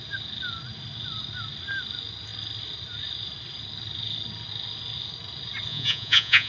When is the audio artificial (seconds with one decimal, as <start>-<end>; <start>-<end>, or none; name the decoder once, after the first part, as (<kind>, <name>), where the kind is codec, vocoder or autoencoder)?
5.7-6.5 (vocoder, Vocos)